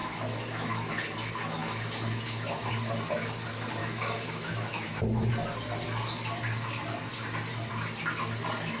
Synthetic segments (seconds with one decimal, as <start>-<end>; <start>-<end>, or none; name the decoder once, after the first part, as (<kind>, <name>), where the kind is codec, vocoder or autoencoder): 0.0-0.9 (autoencoder, DAC-VAE); 1.6-2.7; 3.8-5.3